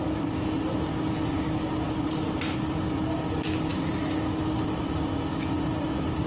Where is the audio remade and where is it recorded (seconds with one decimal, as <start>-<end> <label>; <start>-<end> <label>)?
0.0-6.3 recorded